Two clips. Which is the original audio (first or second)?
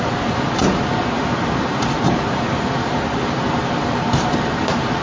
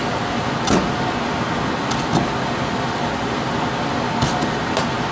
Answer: second